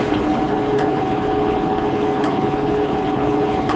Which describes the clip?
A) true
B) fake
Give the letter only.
B